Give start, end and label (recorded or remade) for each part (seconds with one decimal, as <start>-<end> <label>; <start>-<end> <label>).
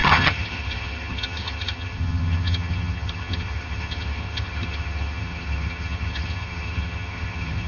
0.0-7.7 remade